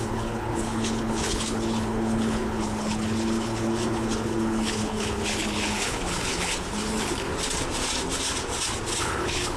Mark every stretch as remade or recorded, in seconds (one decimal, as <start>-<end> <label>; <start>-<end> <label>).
0.0-7.3 remade; 7.3-9.0 recorded; 9.0-9.6 remade